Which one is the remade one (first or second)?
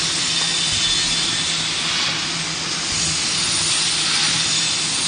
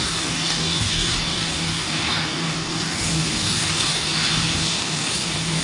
second